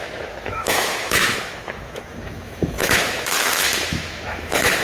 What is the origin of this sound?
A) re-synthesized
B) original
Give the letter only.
A